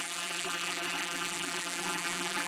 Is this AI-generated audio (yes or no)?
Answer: yes